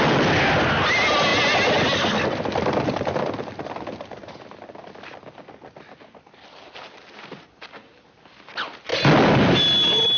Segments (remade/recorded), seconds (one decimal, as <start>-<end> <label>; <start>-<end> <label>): 0.0-10.2 recorded